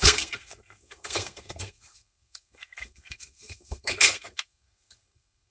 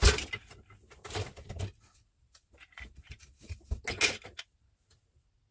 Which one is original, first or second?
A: second